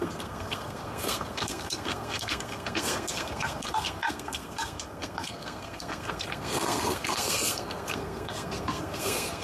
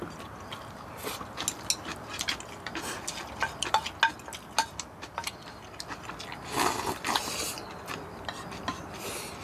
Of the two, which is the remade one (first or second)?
first